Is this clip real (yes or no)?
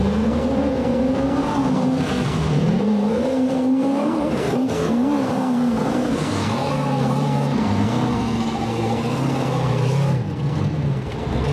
no